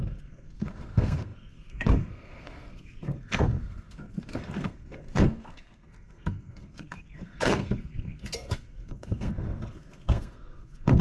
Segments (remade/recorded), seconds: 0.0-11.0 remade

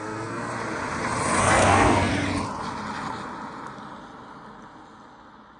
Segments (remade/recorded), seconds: 0.0-0.5 remade; 0.5-1.4 recorded; 1.4-2.1 remade; 2.1-5.6 recorded

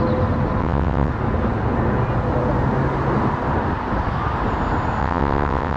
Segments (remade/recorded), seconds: 0.0-0.6 recorded; 0.6-1.1 remade; 1.1-5.0 recorded; 5.0-5.8 remade

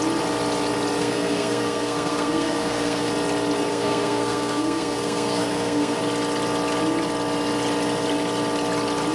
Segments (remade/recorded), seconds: 0.0-1.0 recorded; 1.0-3.1 remade; 3.1-3.7 recorded; 3.7-6.0 remade; 6.0-9.1 recorded

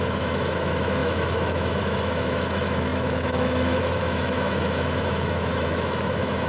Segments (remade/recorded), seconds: 0.0-6.5 remade

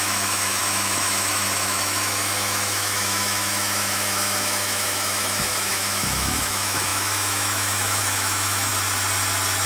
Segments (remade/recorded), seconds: 0.0-8.7 remade; 8.7-9.7 recorded

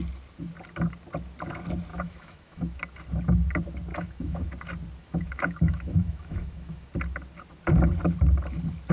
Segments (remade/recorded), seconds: 0.0-1.9 recorded; 1.9-2.8 remade; 2.8-3.9 recorded; 3.9-4.5 remade; 4.5-5.0 recorded; 5.0-6.9 remade; 6.9-8.9 recorded

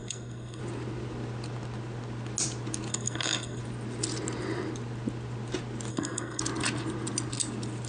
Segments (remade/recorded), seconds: 0.0-0.6 remade; 0.6-2.9 recorded; 2.9-3.6 remade; 3.6-5.9 recorded; 5.9-6.4 remade; 6.4-7.9 recorded